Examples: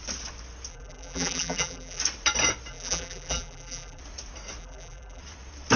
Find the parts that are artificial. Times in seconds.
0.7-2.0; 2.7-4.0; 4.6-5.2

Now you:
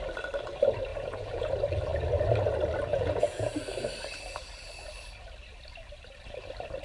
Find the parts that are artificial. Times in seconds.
0.9-1.5; 2.9-3.5

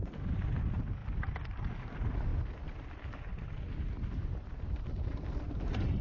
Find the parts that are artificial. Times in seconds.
none

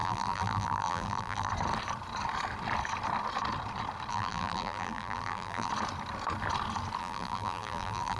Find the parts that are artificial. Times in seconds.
0.0-1.5; 4.1-5.7; 7.0-8.2

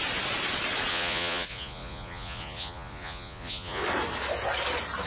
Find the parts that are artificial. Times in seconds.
0.9-3.8

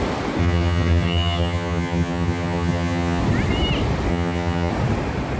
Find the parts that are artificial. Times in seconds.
0.4-3.2; 4.1-4.7

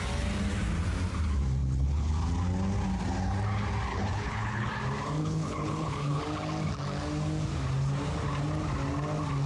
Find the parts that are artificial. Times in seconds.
1.6-2.1; 3.9-4.7; 5.2-6.2

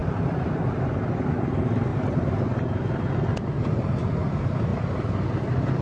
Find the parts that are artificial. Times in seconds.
0.7-1.9; 4.3-4.7; 5.3-5.8